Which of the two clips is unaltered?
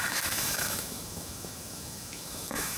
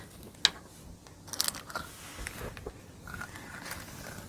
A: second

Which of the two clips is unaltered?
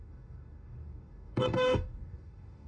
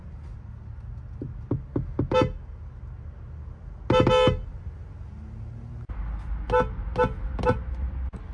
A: second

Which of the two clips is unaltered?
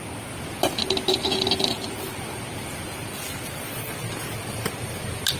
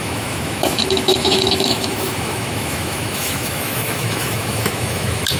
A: first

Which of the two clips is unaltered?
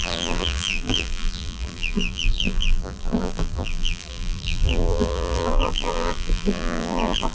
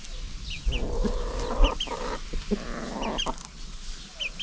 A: second